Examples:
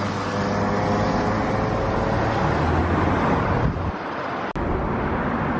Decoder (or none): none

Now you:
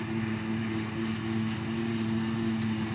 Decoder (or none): none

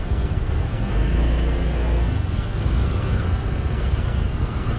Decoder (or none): codec, SNAC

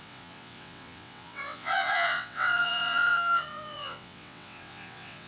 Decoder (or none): vocoder, WaveNeXt